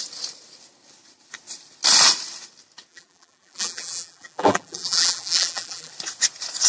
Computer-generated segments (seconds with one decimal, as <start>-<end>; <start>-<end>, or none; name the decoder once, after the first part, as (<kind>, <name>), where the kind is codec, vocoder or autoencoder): 2.9-5.9 (vocoder, BigVGAN v2)